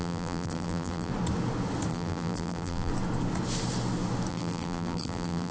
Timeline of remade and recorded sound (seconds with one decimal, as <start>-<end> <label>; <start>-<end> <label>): 0.0-1.1 remade; 1.1-1.9 recorded; 1.9-2.9 remade; 2.9-4.3 recorded; 4.3-5.5 remade